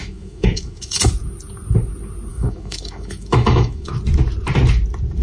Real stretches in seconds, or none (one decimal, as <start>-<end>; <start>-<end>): 1.1-2.3; 3.9-5.2